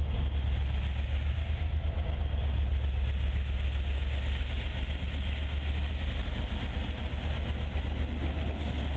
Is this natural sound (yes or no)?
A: yes